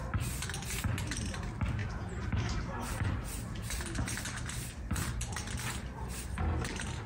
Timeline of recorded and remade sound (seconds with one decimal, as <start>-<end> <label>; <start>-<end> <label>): 0.0-7.1 recorded